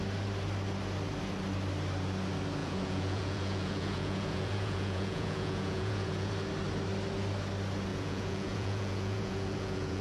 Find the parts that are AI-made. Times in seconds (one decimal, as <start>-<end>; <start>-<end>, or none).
2.6-6.3; 7.9-10.0